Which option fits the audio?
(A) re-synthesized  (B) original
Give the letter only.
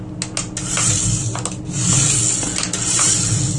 B